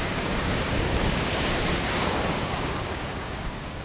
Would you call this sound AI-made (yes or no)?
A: yes